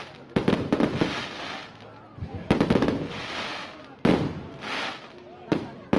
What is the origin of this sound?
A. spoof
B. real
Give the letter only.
B